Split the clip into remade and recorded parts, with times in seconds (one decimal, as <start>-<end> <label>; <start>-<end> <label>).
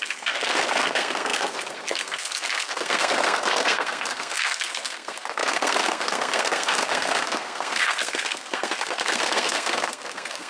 0.0-10.5 remade